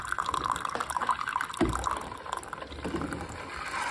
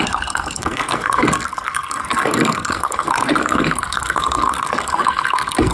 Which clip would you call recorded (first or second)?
first